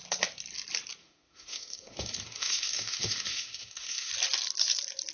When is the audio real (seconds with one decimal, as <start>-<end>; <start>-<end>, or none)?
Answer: 0.0-1.0; 4.1-5.1